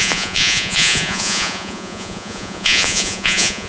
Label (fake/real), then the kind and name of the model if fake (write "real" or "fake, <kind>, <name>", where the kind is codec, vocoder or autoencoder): fake, vocoder, Vocos